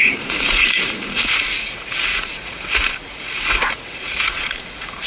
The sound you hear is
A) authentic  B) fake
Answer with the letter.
B